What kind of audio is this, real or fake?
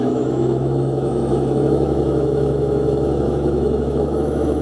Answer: fake